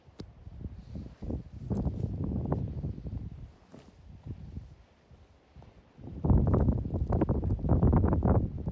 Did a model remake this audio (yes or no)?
no